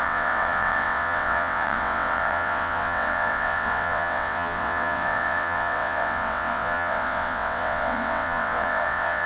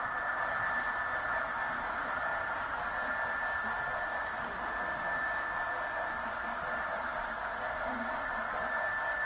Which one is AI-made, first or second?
first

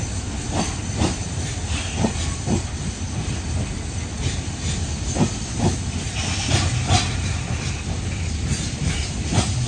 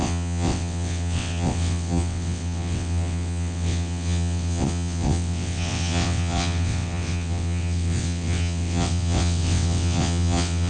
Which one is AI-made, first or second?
second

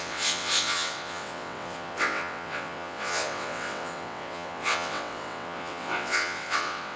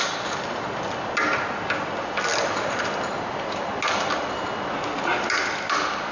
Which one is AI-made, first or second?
first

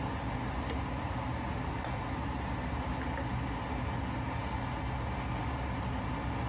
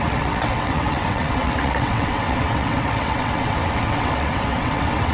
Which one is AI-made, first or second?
second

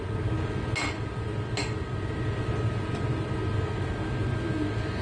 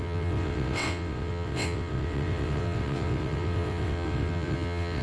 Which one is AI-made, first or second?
second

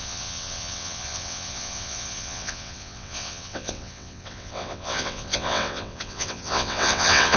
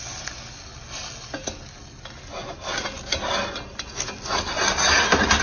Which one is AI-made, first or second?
first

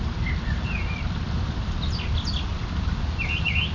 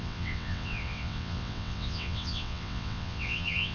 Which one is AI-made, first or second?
second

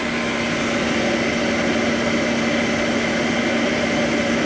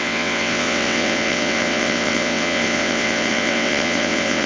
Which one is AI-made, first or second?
second